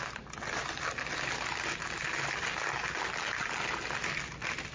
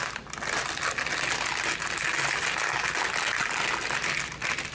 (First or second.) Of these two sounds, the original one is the second